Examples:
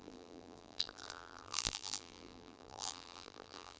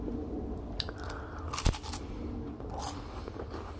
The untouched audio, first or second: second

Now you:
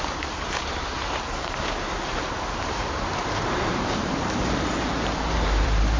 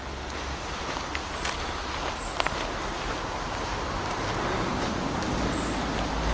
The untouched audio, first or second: second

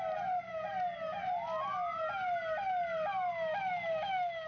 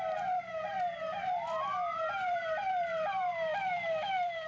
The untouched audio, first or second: first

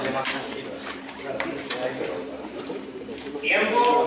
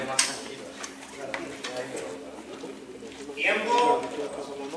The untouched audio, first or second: second